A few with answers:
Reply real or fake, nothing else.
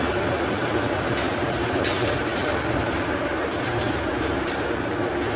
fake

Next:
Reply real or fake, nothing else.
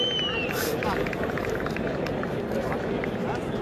real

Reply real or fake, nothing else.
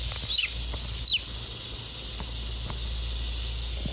real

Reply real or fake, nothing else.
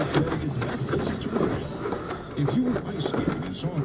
real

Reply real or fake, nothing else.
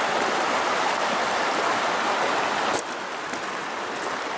real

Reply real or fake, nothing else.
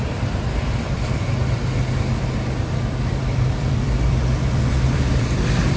fake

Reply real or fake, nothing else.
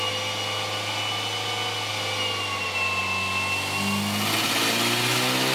real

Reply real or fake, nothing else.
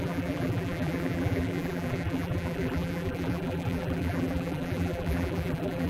fake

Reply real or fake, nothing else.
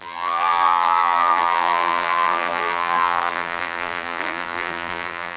fake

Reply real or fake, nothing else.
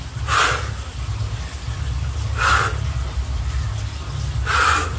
real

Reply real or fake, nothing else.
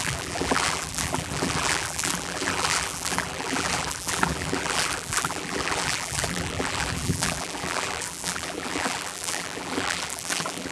fake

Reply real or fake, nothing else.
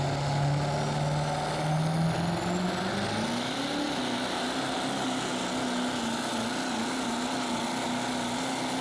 real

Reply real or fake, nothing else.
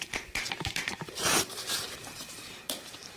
fake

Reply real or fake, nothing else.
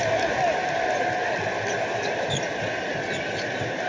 real